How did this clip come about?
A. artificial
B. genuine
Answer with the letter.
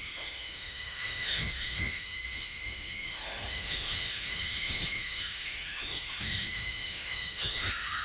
A